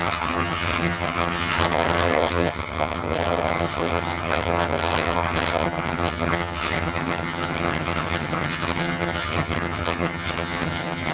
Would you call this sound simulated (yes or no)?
yes